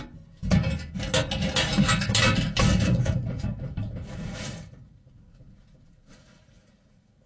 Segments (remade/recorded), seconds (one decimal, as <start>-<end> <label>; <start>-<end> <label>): 0.0-2.7 recorded; 2.7-7.3 remade